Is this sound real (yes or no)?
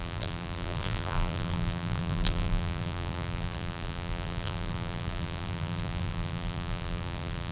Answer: no